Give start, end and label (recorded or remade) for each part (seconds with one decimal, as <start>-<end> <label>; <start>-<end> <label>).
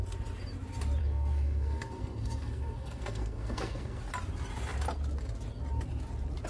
0.0-1.0 recorded; 1.0-4.0 remade; 4.0-6.5 recorded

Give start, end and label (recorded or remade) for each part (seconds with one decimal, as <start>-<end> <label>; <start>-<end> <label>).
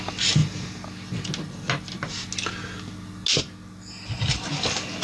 0.0-5.0 recorded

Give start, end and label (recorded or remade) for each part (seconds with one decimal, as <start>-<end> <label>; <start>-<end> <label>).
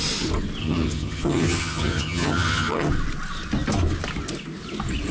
0.0-0.6 recorded; 0.6-2.9 remade; 2.9-5.1 recorded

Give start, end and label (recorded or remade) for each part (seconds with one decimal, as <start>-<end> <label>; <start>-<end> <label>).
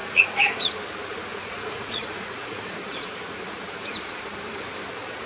0.0-0.7 remade; 0.7-1.3 recorded; 1.3-3.2 remade; 3.2-5.3 recorded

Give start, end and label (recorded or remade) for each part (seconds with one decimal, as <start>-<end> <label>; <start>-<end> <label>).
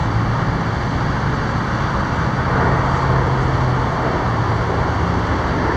0.0-5.8 recorded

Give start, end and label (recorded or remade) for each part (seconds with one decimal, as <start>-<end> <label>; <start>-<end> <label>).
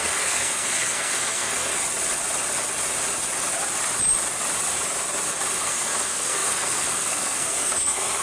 0.0-1.7 remade; 1.7-5.6 recorded; 5.6-8.2 remade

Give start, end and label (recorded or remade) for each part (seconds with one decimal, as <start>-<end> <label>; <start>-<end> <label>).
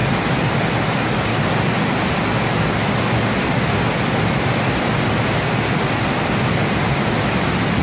0.0-7.8 recorded